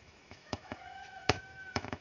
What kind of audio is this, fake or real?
fake